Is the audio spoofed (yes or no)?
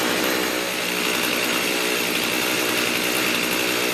no